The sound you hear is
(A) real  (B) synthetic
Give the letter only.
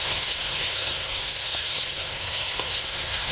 B